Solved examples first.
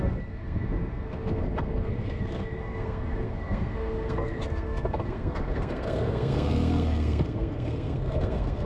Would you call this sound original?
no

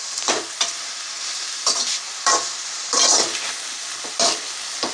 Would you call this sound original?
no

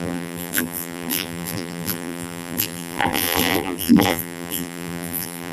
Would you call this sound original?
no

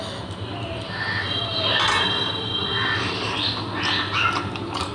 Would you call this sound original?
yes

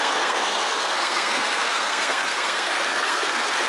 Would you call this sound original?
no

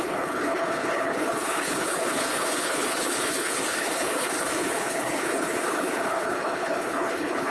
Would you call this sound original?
no